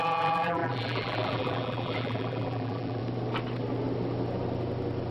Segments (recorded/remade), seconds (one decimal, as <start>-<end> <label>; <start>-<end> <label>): 0.0-3.0 remade; 3.0-5.1 recorded